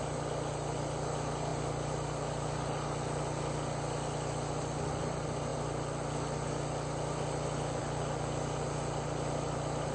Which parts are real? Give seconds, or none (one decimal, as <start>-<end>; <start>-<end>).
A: 0.0-9.9